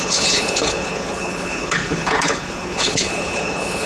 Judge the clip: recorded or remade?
remade